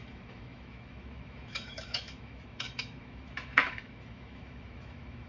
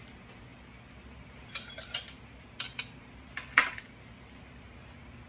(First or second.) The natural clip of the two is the second